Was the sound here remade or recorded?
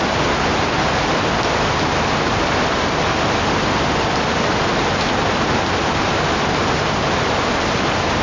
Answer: recorded